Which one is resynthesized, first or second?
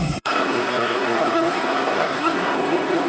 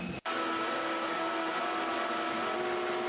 first